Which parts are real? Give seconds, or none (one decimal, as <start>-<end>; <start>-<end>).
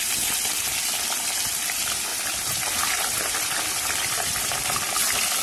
0.0-2.1; 4.5-5.4